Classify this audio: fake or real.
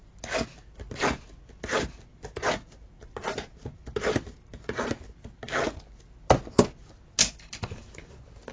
real